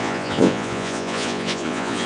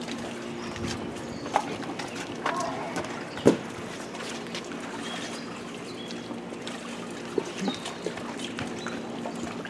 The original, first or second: second